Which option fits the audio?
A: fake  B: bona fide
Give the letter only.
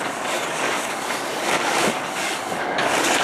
A